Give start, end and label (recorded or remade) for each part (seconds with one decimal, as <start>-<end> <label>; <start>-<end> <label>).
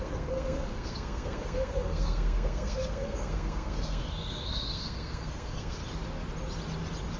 0.0-5.8 remade; 5.8-7.2 recorded